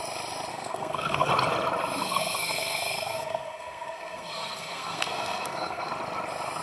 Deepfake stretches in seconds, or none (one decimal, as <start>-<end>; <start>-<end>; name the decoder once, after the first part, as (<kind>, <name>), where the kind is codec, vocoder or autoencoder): 0.5-1.3 (codec, SNAC); 2.0-5.9